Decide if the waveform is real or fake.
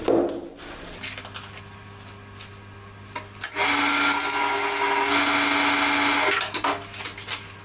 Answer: real